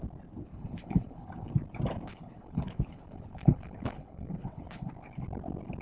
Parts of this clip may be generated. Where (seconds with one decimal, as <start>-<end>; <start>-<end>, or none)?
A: 0.5-1.5; 2.1-4.9